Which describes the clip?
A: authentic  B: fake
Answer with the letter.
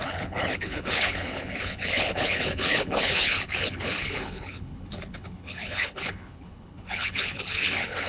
B